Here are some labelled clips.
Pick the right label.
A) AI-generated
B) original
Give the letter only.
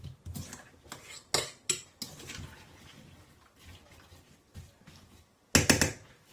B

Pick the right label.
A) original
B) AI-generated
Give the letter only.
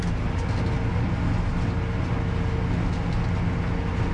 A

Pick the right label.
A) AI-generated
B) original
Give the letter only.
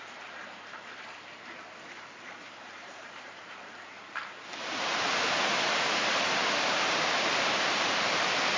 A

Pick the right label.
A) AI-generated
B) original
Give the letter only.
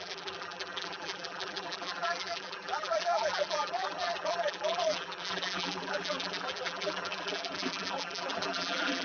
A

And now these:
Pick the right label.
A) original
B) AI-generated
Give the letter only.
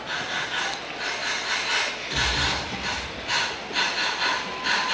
A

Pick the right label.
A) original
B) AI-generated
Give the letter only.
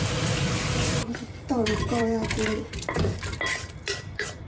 B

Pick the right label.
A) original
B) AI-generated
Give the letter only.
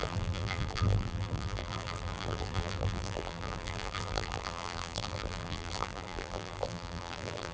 B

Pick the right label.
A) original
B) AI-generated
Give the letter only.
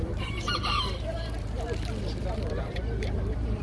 B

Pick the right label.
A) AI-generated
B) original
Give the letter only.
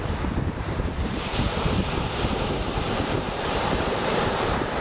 A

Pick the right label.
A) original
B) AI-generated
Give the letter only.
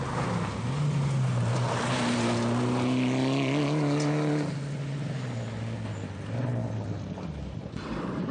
A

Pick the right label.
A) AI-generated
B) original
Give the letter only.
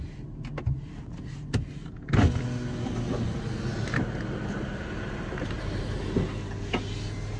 B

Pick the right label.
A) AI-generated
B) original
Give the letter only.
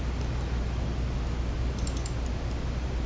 B